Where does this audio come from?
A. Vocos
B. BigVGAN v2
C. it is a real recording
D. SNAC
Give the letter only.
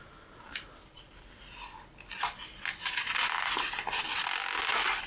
C